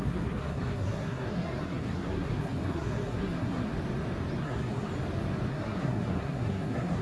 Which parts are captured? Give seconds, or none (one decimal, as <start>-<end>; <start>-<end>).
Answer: 3.7-4.4; 4.9-5.5